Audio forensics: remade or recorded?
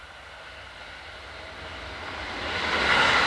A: recorded